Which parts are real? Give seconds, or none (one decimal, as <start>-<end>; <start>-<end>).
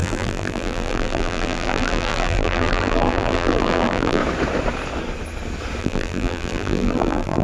4.2-5.8